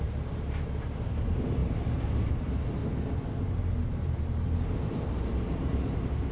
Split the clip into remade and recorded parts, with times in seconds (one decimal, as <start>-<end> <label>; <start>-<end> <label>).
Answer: 0.0-2.8 remade; 2.8-5.0 recorded; 5.0-6.3 remade